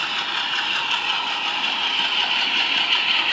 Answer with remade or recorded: recorded